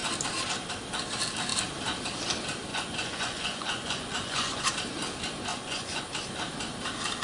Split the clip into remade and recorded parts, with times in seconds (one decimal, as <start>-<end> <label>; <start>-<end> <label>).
0.0-2.7 recorded; 2.7-4.6 remade; 4.6-5.5 recorded; 5.5-6.0 remade; 6.0-7.2 recorded